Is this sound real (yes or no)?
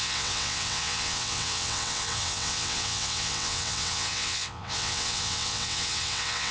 no